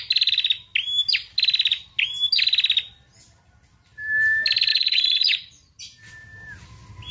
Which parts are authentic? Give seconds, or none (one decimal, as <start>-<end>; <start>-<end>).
0.0-4.7; 5.8-7.1

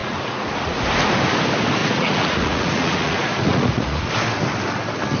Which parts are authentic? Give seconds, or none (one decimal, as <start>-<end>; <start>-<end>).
0.8-1.8; 4.1-5.2

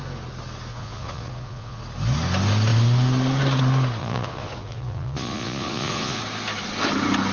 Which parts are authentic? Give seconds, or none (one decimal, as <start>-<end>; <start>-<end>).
0.0-0.7; 1.8-4.0; 6.2-7.3

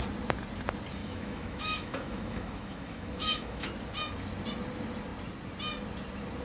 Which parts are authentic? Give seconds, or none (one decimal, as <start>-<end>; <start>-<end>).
0.0-1.0; 3.7-6.4

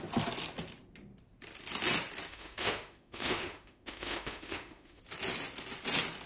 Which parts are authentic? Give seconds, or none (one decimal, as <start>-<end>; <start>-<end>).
0.0-2.3; 5.0-6.3

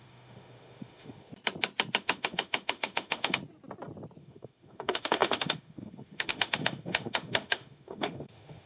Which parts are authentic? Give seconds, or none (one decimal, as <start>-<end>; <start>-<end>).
1.3-2.0; 3.4-4.2

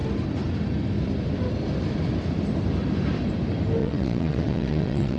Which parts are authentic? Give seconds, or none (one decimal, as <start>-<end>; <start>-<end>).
0.0-3.8

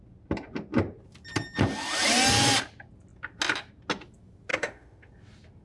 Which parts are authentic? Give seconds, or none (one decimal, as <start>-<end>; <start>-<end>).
0.0-4.5; 5.1-5.6